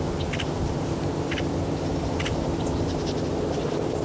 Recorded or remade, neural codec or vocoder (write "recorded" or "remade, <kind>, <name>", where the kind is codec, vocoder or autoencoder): recorded